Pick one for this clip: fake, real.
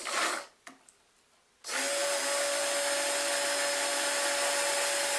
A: real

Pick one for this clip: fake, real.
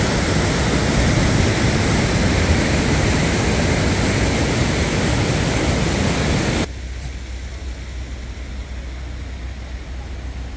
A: real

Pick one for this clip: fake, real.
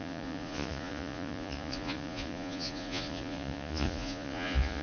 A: fake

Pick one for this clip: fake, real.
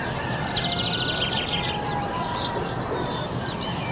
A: real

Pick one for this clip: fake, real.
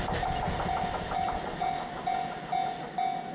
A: real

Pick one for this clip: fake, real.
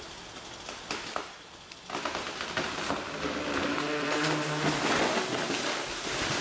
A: real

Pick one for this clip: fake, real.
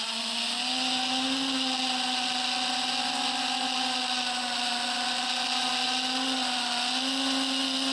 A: real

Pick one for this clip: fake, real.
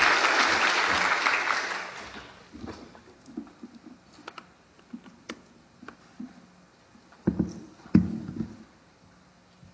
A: real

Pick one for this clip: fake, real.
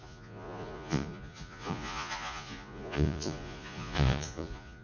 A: fake